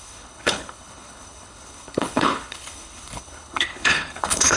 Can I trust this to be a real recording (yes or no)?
no